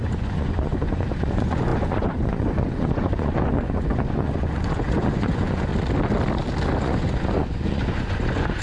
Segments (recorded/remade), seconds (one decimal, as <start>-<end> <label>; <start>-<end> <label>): 0.0-5.7 remade; 5.7-6.8 recorded; 6.8-8.6 remade